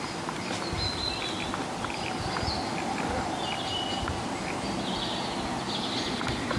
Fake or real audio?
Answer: real